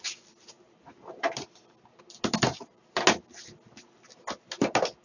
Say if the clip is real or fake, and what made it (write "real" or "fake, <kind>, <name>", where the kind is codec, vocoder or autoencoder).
real